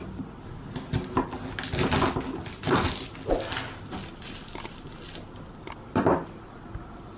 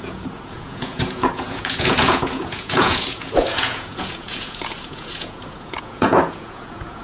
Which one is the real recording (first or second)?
first